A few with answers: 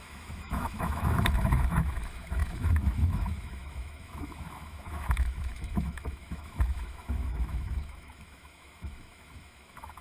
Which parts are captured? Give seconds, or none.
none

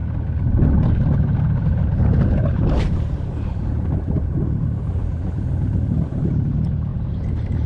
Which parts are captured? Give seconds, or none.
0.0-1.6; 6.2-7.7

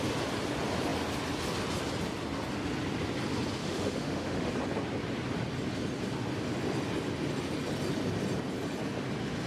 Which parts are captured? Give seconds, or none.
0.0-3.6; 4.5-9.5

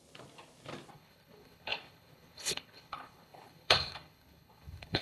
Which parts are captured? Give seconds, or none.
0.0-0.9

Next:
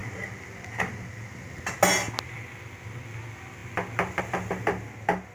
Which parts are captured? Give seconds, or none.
0.0-5.3

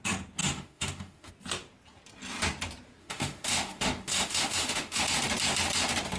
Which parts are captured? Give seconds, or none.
0.0-0.4; 1.3-3.0; 5.0-6.2

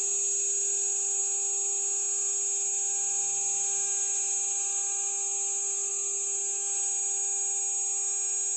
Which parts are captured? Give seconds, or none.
0.0-8.6